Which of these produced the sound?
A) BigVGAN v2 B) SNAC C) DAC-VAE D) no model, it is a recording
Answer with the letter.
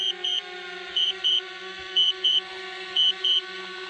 A